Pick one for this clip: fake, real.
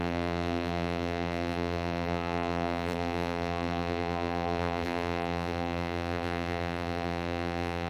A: fake